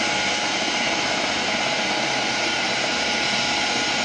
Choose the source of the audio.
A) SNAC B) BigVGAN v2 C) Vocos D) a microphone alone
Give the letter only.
D